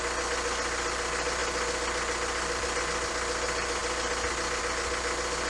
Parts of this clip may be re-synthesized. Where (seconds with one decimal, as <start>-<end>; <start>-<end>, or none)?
none